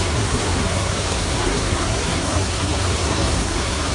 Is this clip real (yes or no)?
no